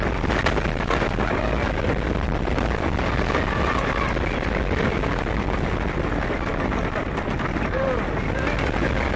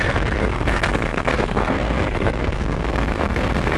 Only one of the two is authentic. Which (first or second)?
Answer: first